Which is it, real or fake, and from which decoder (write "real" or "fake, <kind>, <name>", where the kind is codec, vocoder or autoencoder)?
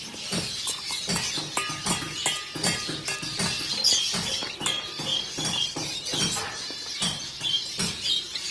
real